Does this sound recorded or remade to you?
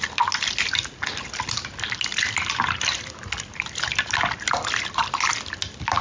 recorded